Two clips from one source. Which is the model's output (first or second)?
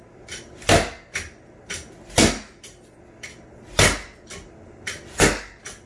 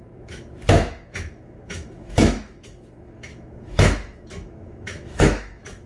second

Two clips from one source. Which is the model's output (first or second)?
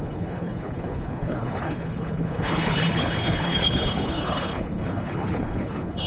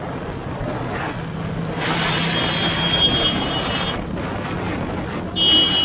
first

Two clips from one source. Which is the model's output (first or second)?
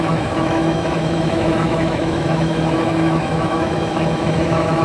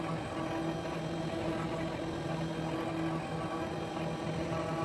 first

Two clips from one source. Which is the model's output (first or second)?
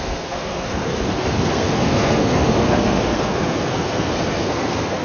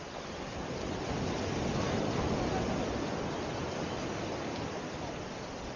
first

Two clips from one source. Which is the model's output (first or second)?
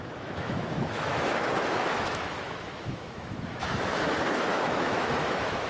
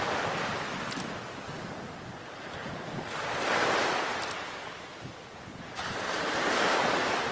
first